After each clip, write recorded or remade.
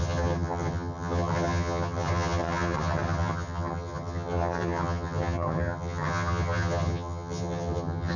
remade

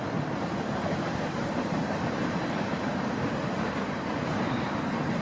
remade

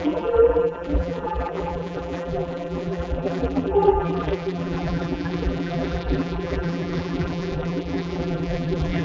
remade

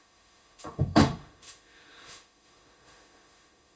remade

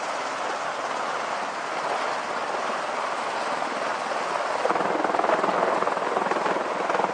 recorded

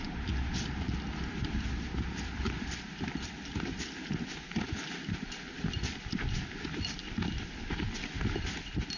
remade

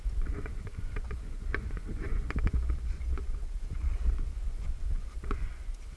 remade